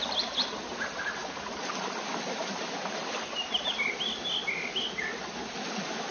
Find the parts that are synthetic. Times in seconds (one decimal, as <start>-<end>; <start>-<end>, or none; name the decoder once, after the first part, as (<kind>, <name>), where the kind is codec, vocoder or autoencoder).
none